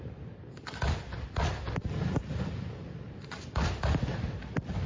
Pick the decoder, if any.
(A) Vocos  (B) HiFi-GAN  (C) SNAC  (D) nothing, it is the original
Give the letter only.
D